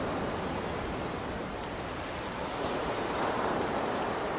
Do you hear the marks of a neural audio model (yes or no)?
no